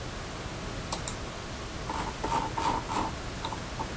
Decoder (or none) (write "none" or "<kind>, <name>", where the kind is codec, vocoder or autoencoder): none